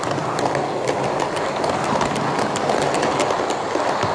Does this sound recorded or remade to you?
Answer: recorded